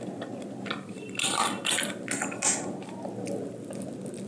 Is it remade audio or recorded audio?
recorded